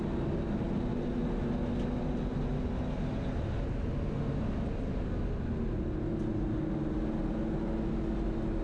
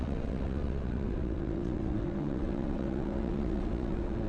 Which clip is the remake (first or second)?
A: second